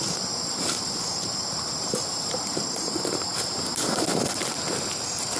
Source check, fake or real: fake